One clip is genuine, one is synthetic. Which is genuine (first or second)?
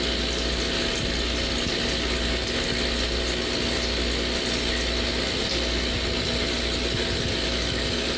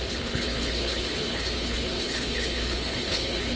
first